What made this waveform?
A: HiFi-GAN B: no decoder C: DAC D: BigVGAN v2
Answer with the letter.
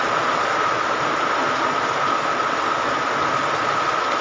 B